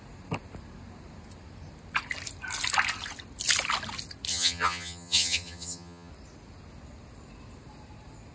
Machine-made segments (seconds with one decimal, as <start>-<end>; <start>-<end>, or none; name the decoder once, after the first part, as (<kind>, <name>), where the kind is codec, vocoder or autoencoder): 4.3-6.1 (vocoder, HiFi-GAN)